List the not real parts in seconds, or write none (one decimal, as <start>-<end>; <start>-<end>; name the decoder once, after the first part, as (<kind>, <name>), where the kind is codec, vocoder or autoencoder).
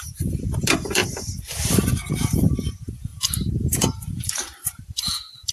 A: 0.0-5.5 (vocoder, BigVGAN v2)